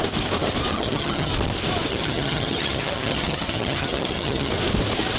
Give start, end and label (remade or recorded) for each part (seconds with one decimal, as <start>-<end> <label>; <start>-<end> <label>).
0.0-0.7 recorded; 0.7-1.3 remade; 1.3-1.9 recorded; 1.9-4.5 remade; 4.5-5.2 recorded